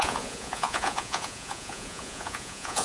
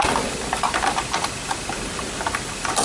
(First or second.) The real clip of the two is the second